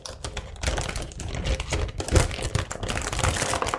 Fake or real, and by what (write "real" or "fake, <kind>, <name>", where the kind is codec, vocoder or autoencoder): real